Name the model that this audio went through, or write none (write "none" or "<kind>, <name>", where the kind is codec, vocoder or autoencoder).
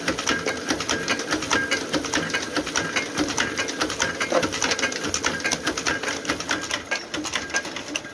none